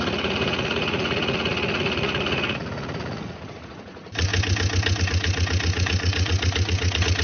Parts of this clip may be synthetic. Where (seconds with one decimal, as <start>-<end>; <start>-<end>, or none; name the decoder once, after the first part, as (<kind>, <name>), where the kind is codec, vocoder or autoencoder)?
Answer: 0.0-4.3 (vocoder, Vocos); 5.0-7.2

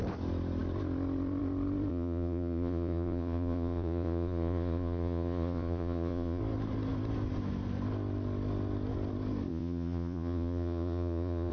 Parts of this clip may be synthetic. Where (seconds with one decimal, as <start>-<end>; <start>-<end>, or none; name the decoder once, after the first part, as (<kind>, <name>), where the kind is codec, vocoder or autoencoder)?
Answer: 1.9-6.4 (vocoder, Vocos); 9.5-11.5

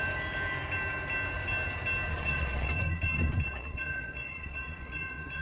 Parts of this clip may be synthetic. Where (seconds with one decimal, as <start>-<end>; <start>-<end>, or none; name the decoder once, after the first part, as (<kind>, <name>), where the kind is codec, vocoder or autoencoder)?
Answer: 2.1-5.4 (vocoder, Vocos)

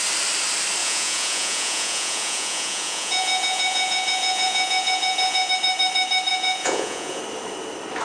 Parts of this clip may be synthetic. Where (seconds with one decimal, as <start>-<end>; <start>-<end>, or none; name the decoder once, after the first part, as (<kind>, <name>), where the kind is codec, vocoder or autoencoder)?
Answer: 0.8-5.5 (vocoder, Vocos); 6.3-7.2

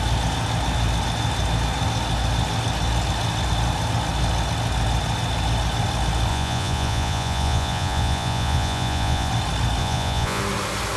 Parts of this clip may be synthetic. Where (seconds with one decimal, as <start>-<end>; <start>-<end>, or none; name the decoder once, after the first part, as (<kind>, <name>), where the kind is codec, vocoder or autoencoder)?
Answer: 6.3-9.3 (vocoder, Vocos); 9.8-10.4

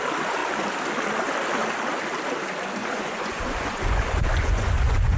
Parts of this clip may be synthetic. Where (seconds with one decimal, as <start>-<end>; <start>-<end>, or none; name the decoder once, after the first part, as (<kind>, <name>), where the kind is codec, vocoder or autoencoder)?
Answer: 2.8-5.2 (vocoder, Vocos)

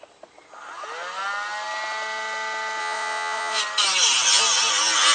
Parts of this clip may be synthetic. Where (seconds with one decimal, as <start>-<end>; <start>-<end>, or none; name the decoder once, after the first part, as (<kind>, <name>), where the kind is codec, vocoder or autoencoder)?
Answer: 2.8-3.6 (vocoder, Vocos)